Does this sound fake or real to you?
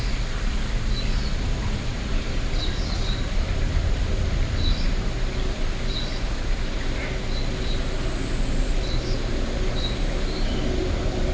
real